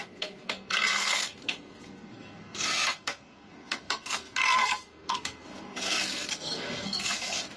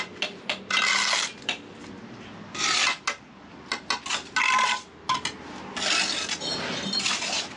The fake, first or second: first